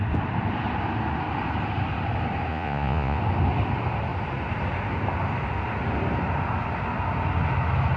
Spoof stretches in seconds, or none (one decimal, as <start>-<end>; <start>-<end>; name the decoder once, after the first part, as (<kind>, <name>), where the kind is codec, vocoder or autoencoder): 2.5-3.2 (vocoder, Vocos)